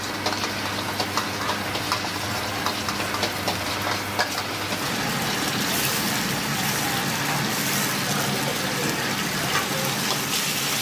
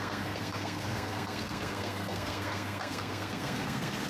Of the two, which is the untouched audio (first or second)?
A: first